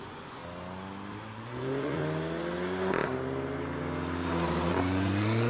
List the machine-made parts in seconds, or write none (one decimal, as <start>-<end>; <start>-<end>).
0.0-0.4; 1.3-2.0; 4.7-5.5